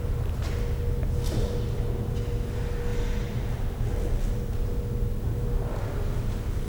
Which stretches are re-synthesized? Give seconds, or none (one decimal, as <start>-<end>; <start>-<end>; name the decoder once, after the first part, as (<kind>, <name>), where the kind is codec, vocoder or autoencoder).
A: none